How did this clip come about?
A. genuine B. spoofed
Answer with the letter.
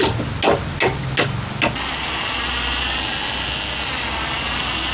A